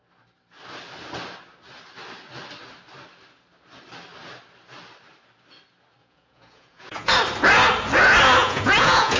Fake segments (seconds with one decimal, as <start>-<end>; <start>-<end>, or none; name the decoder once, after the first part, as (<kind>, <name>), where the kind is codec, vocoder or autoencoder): 6.0-7.1 (vocoder, Vocos); 8.4-9.2